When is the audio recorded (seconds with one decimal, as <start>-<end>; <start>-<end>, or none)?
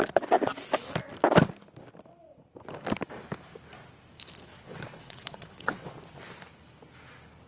0.0-4.5; 5.9-7.5